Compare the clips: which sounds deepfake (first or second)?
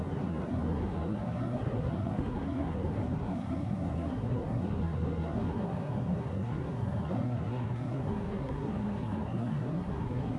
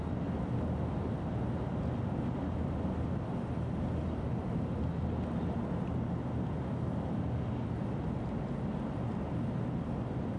first